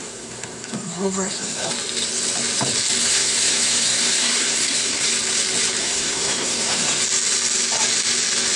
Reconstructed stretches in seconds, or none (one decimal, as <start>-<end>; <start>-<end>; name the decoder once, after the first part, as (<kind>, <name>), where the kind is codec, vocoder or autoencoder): 0.0-1.7 (codec, SNAC); 3.0-5.1; 5.8-7.0